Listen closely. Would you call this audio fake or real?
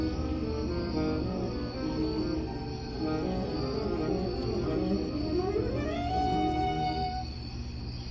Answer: real